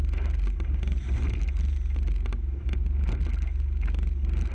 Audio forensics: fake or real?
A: real